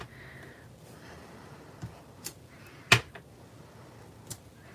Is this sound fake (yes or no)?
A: no